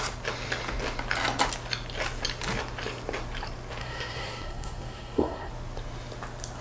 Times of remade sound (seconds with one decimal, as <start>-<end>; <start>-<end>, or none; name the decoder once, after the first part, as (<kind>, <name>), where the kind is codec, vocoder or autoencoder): 3.8-5.5 (codec, SNAC)